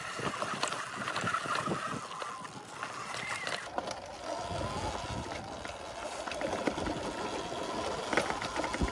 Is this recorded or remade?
recorded